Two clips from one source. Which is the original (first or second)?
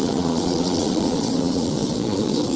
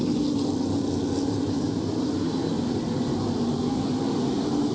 second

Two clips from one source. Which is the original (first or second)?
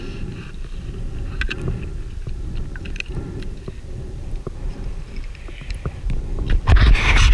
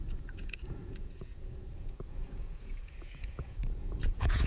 first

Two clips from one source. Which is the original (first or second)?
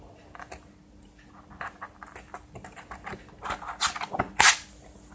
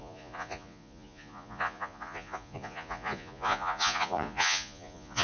first